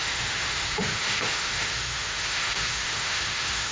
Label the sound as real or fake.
fake